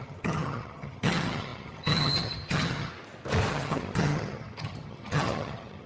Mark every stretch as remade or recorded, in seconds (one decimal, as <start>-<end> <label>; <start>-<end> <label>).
0.0-2.9 remade; 2.9-3.5 recorded; 3.5-5.9 remade